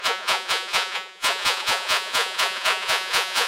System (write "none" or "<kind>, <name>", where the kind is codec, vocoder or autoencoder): vocoder, Vocos